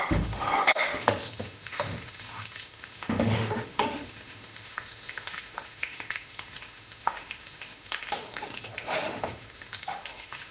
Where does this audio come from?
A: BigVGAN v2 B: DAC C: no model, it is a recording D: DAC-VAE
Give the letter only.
D